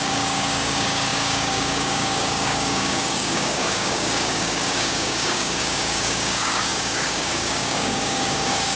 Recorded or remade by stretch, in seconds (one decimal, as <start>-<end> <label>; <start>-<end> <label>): 0.0-8.8 remade